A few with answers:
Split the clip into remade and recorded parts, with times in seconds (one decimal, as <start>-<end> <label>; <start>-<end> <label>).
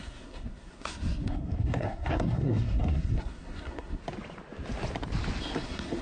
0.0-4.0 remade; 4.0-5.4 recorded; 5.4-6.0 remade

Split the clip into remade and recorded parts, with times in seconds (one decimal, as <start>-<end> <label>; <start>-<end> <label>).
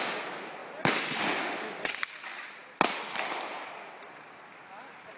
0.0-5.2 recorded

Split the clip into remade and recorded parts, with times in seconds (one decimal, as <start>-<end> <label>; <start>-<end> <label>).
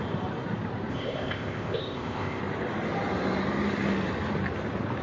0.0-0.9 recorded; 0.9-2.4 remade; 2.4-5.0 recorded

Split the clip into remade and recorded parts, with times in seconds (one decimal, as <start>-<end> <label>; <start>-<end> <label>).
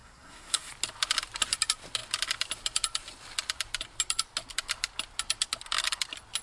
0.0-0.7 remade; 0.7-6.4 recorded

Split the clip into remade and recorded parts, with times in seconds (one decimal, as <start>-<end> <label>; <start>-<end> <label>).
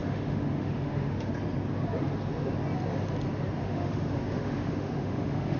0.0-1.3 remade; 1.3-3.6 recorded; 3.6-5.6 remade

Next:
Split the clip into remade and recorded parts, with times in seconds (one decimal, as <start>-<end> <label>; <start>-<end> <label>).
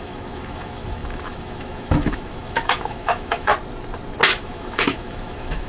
0.0-3.5 remade; 3.5-4.4 recorded; 4.4-5.7 remade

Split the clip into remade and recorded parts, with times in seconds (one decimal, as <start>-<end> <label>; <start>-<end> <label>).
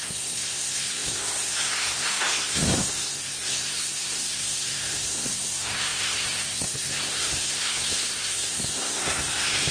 0.0-9.7 remade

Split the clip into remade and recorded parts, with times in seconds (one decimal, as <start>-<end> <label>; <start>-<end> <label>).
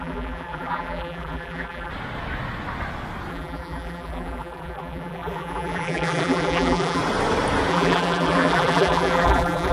0.0-1.9 remade; 1.9-3.3 recorded; 3.3-7.0 remade; 7.0-7.7 recorded; 7.7-9.7 remade